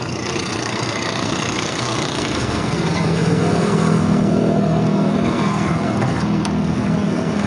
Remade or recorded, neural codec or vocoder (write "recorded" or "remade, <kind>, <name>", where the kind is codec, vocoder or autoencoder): remade, codec, SNAC